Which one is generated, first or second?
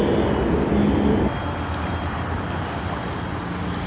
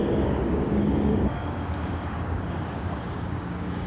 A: second